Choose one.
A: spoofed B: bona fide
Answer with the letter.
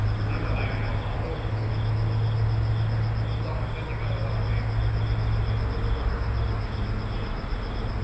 B